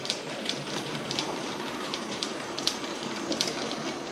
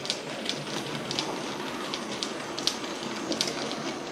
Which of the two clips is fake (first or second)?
first